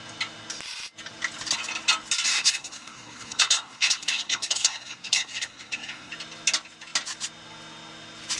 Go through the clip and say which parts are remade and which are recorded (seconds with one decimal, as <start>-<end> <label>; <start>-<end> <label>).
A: 0.0-2.3 recorded; 2.3-6.1 remade; 6.1-8.4 recorded